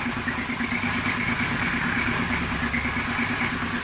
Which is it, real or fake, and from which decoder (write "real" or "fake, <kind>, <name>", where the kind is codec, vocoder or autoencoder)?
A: real